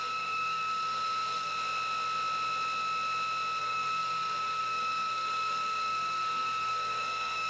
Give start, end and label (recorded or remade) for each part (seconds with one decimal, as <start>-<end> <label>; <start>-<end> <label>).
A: 0.0-1.5 remade; 1.5-3.6 recorded; 3.6-7.5 remade